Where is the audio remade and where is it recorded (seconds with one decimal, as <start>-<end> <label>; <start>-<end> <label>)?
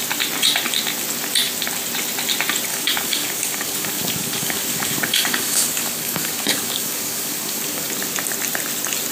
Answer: 0.0-2.7 recorded; 2.7-7.9 remade; 7.9-9.1 recorded